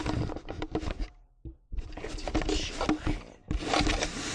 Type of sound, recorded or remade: recorded